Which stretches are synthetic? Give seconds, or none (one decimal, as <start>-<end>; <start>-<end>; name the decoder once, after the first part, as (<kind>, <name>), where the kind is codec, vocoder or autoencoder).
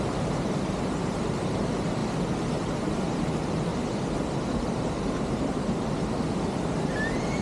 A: 0.0-2.0 (vocoder, BigVGAN v2); 2.5-3.7; 4.6-7.4